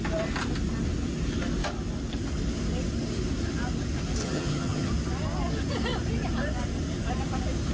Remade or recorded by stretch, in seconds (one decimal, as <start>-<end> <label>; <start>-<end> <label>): 0.0-4.2 recorded; 4.2-4.9 remade; 4.9-7.7 recorded